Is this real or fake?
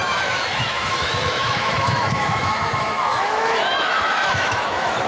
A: fake